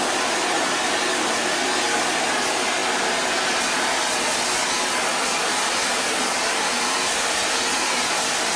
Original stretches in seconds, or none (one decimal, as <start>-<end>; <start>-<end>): 0.0-8.6